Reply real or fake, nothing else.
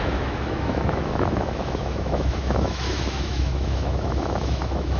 fake